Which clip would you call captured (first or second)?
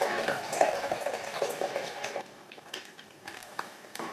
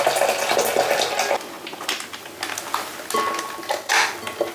second